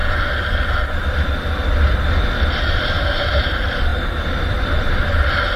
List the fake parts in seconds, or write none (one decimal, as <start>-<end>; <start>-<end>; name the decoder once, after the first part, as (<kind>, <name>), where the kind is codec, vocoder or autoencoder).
3.4-5.6 (vocoder, BigVGAN v2)